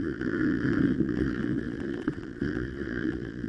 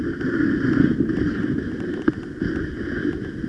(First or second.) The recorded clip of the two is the second